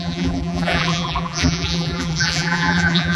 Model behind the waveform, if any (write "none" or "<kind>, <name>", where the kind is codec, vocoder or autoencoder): vocoder, BigVGAN v2